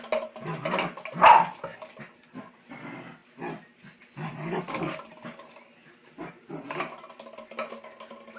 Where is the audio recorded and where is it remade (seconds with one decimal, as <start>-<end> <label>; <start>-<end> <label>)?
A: 0.0-8.4 recorded